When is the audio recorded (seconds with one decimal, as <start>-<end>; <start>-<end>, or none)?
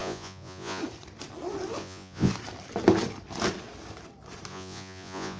0.8-1.8; 2.3-4.5